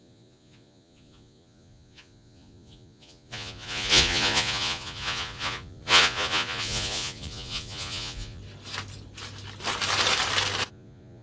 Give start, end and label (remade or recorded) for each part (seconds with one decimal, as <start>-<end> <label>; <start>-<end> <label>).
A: 0.0-8.4 remade; 8.4-10.7 recorded; 10.7-11.2 remade